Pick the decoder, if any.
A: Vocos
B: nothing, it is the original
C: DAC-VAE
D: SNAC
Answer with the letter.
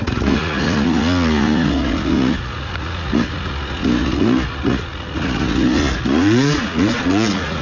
A